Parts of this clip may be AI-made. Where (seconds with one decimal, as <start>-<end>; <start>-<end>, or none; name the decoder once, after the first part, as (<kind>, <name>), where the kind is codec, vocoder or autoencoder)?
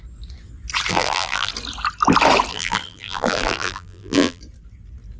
0.9-1.5 (vocoder, BigVGAN v2); 2.5-4.4